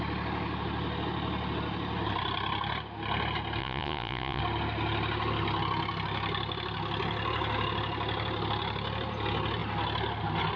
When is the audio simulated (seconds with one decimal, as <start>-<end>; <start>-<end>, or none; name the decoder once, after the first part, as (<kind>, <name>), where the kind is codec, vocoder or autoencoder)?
3.6-4.4 (vocoder, Vocos)

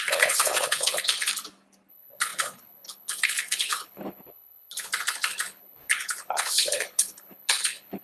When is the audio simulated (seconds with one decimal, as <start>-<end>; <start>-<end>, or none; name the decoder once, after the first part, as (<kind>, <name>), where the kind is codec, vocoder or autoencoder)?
0.0-1.3 (codec, HILCodec); 1.9-8.0

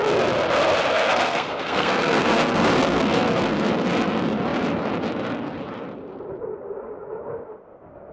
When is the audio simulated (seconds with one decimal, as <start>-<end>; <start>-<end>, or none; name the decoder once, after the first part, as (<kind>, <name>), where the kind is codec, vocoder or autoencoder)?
0.9-3.7 (codec, SNAC)

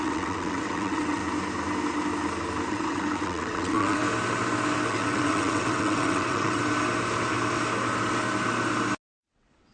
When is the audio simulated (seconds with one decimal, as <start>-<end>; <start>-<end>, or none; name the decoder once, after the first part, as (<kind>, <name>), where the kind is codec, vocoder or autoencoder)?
0.0-1.2 (vocoder, WaveNeXt); 2.7-4.0; 4.9-6.6; 9.2-9.7

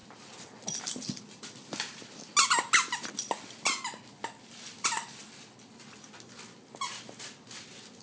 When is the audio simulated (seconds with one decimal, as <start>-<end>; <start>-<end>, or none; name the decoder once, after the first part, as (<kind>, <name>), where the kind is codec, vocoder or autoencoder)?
none

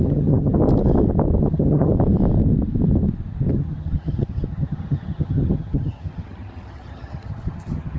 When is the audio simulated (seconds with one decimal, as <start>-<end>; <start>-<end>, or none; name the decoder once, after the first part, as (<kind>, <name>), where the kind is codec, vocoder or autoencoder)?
0.0-0.6 (vocoder, HiFi-GAN); 1.4-1.9; 3.5-8.0

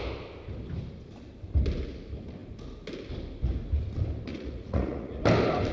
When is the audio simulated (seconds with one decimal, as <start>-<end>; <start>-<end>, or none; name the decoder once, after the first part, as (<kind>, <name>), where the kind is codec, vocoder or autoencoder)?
4.3-5.2 (vocoder, Vocos)